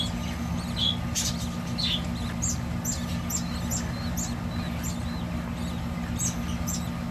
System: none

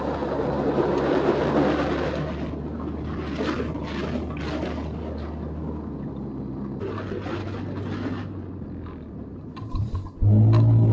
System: none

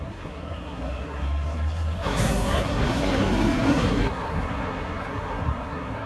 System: codec, SNAC